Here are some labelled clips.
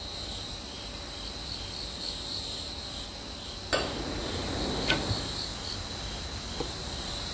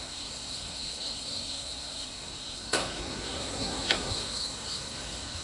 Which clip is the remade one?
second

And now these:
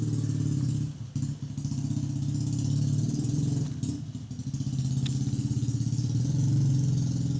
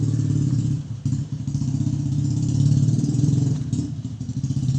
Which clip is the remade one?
second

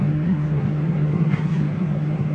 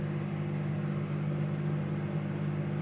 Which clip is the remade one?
first